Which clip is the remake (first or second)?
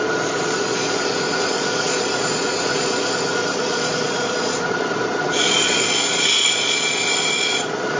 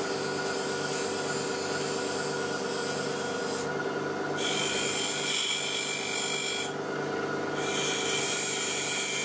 first